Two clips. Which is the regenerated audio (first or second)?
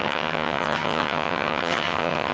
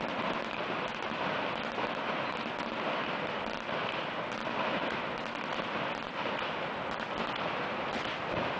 first